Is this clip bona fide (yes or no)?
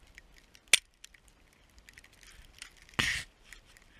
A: yes